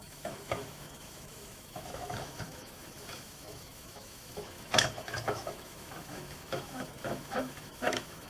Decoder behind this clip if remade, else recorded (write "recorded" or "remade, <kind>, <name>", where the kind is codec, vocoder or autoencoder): remade, autoencoder, DAC-VAE